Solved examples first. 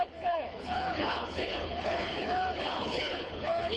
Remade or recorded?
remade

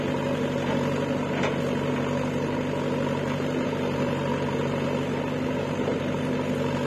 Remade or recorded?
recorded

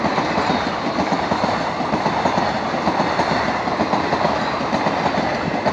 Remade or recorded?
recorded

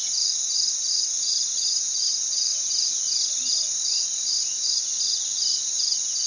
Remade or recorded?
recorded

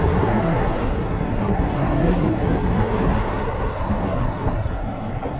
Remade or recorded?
remade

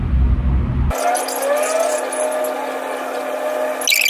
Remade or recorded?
recorded